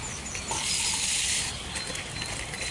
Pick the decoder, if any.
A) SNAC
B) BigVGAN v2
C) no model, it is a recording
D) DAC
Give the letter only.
C